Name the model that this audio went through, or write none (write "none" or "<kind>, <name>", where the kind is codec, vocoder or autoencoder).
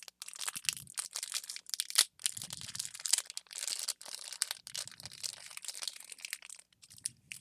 none